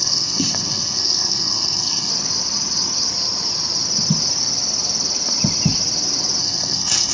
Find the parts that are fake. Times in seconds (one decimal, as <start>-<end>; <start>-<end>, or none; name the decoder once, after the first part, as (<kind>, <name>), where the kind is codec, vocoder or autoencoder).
0.0-2.1 (codec, SNAC); 6.4-7.1